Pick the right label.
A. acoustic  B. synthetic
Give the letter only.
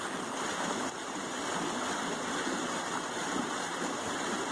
A